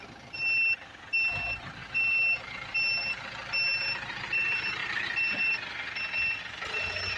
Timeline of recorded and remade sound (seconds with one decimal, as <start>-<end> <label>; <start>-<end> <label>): 0.0-7.2 recorded